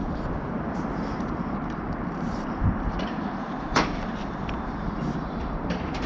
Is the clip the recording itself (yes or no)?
no